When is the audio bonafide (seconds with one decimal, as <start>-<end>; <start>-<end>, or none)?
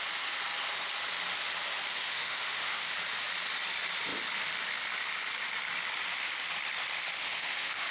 0.0-1.9; 2.9-7.2